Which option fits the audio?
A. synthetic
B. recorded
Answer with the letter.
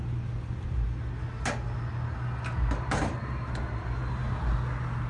B